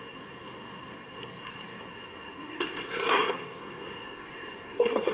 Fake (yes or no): yes